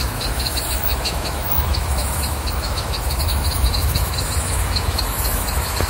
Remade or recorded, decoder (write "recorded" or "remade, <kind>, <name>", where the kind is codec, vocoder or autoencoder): remade, autoencoder, DAC-VAE